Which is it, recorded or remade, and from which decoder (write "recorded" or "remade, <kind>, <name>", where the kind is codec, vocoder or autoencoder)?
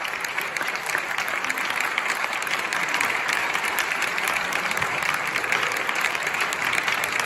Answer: remade, vocoder, BigVGAN v2